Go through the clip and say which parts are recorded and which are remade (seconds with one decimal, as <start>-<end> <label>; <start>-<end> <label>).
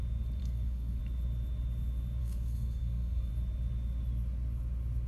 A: 0.0-0.4 recorded; 0.4-1.0 remade; 1.0-2.2 recorded; 2.2-3.3 remade; 3.3-5.1 recorded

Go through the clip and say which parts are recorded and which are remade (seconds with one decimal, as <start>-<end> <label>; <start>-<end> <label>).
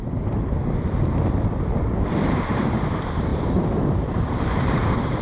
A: 0.0-2.5 recorded; 2.5-5.2 remade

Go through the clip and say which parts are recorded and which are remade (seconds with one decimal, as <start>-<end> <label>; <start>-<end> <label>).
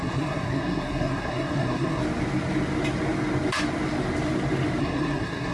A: 0.0-2.0 remade; 2.0-4.8 recorded; 4.8-5.5 remade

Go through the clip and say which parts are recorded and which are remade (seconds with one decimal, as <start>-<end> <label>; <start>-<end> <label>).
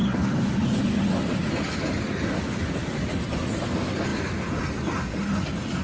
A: 0.0-5.8 recorded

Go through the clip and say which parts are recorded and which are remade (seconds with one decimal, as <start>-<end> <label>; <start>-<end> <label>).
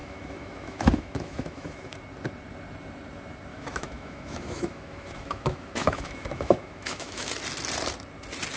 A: 0.0-2.0 remade; 2.0-3.5 recorded; 3.5-7.3 remade; 7.3-8.6 recorded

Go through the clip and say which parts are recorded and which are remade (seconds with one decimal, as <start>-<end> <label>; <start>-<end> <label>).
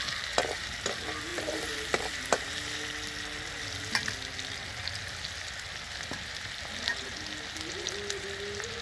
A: 0.0-8.8 recorded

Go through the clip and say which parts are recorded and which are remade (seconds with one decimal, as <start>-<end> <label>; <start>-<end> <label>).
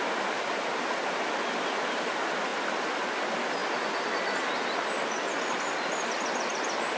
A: 0.0-7.0 recorded